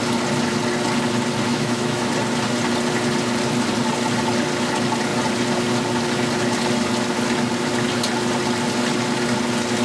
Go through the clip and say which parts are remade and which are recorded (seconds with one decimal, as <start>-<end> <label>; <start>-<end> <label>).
0.0-1.5 recorded; 1.5-2.1 remade; 2.1-9.8 recorded